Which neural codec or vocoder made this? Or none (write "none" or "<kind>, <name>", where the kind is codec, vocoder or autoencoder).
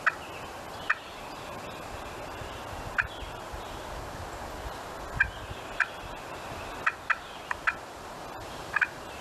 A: none